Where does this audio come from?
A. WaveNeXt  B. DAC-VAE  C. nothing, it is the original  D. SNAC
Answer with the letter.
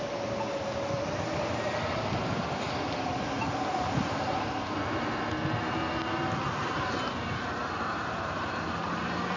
C